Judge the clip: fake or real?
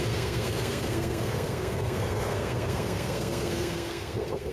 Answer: fake